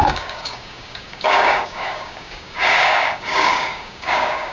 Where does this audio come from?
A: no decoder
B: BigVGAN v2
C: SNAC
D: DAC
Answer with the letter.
D